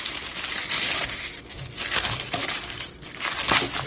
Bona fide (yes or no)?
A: yes